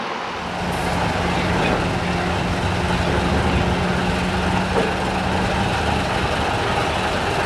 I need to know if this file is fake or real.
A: real